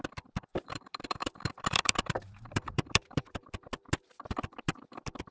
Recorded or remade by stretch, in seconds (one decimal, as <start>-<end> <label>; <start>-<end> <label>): 0.0-0.5 recorded; 0.5-3.5 remade; 3.5-5.3 recorded